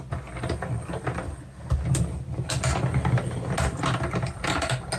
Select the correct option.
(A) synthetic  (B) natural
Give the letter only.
B